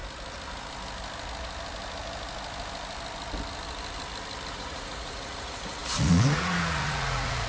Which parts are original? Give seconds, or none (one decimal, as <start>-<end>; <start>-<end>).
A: 0.0-4.5